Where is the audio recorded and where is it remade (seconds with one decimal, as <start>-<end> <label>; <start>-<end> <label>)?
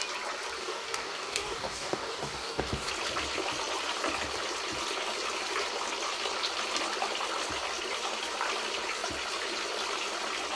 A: 0.0-0.6 recorded; 0.6-2.9 remade; 2.9-10.6 recorded